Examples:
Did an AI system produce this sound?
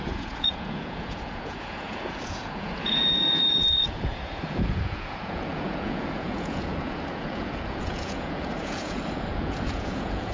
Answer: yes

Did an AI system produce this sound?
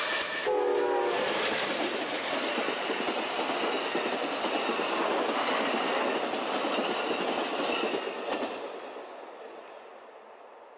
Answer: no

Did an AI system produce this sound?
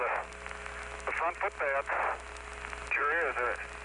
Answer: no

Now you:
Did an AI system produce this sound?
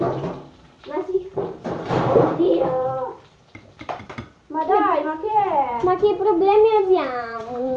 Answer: yes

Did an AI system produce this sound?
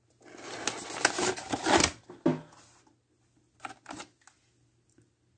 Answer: no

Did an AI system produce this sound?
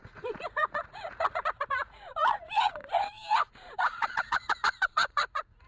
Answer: yes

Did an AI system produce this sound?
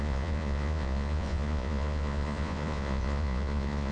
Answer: yes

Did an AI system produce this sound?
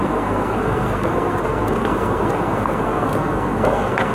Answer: yes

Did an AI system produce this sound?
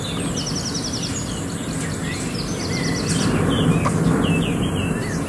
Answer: no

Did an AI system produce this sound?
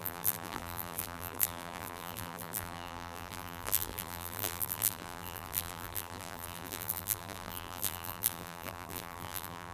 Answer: yes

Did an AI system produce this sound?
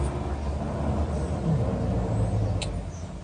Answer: no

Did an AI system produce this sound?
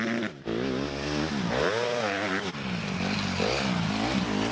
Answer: no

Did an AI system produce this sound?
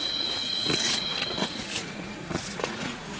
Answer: yes